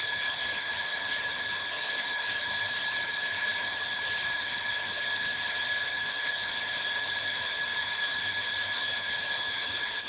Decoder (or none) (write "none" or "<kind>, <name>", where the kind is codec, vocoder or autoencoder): codec, HILCodec